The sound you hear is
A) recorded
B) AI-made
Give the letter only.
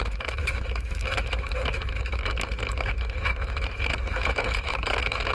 B